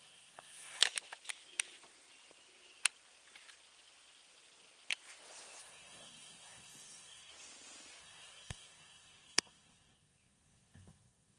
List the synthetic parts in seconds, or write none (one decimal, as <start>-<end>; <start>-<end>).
0.0-0.8; 5.6-7.3; 8.0-11.4

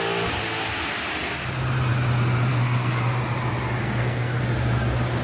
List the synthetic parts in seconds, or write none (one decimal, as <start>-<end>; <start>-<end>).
2.5-3.0; 3.8-4.4

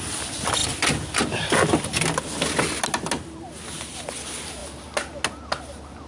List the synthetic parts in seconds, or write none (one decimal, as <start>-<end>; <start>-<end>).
none